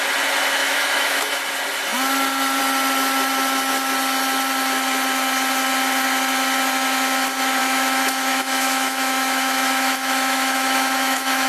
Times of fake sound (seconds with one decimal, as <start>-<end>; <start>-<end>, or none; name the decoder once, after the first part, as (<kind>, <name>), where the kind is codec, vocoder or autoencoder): 0.6-1.4 (autoencoder, DAC-VAE); 7.6-11.5